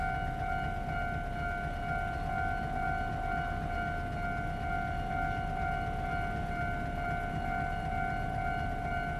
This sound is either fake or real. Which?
real